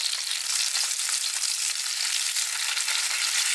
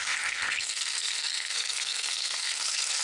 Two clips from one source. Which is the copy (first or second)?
second